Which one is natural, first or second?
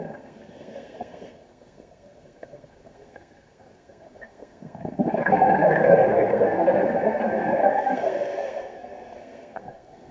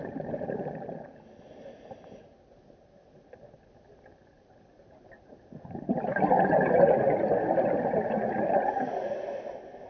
second